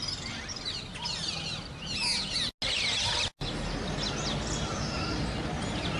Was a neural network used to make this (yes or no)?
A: no